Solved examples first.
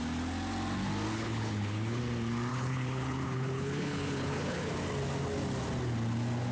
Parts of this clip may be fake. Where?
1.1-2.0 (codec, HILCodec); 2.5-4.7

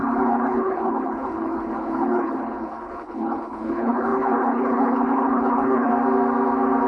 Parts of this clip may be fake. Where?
0.0-5.9 (codec, HILCodec)

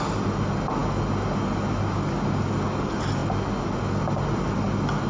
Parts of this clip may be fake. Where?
none

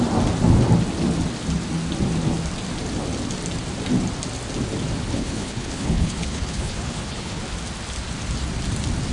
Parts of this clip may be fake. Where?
5.1-7.4 (codec, HILCodec)

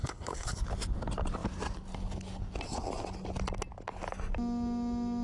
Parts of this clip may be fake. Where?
0.0-0.6 (codec, HILCodec)

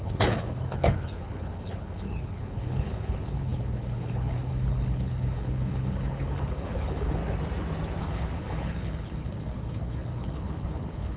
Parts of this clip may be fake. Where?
0.0-7.2 (codec, HILCodec); 8.0-11.2

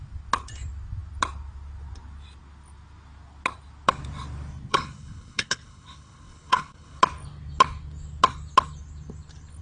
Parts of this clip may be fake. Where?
4.7-7.0 (codec, HILCodec)